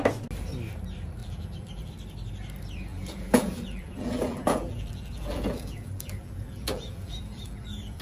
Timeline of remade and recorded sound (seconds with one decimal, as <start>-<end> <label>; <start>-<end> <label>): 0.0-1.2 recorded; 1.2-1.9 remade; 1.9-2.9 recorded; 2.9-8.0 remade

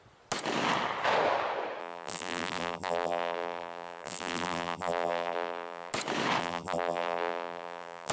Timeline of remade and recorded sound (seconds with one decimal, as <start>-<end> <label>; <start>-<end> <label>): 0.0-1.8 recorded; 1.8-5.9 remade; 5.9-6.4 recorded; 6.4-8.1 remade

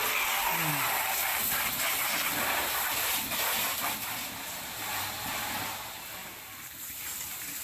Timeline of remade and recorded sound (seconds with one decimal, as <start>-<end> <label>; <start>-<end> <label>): 0.0-0.7 recorded; 0.7-5.3 remade; 5.3-6.2 recorded; 6.2-7.0 remade; 7.0-7.6 recorded